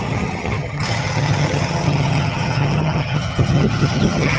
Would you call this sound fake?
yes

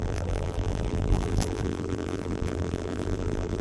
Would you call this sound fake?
yes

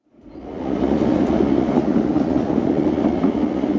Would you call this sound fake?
yes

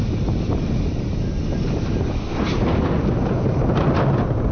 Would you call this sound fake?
no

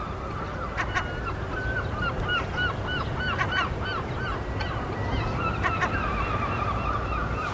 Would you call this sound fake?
no